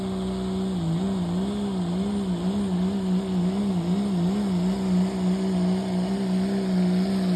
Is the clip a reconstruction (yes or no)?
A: no